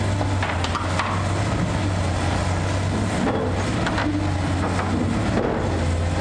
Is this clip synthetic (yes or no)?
no